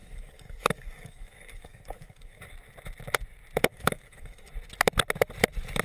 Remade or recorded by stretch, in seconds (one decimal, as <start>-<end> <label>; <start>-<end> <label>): 0.0-2.4 remade; 2.4-3.7 recorded; 3.7-4.5 remade; 4.5-5.8 recorded